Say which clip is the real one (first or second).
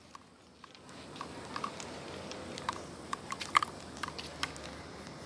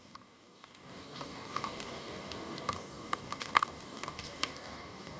first